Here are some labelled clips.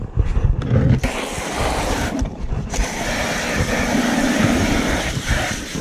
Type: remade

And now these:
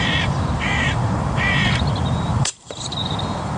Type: remade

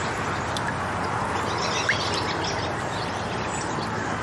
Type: recorded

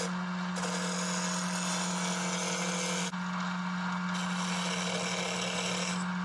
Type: recorded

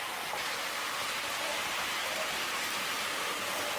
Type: remade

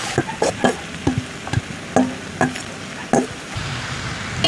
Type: recorded